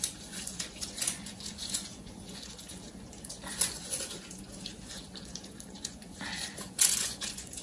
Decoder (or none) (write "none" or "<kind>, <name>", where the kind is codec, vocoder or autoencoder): vocoder, Vocos